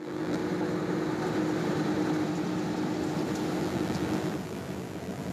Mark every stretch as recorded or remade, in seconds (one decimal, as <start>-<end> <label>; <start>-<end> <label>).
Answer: 0.0-0.4 remade; 0.4-3.6 recorded; 3.6-5.3 remade